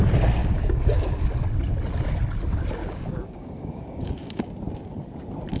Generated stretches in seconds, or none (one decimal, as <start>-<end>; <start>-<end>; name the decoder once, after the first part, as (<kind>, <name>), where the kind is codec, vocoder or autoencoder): 0.4-1.2 (codec, DAC); 2.8-4.4